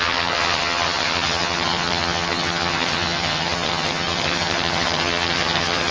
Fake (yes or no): yes